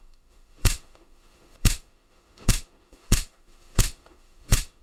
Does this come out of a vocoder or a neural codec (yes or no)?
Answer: yes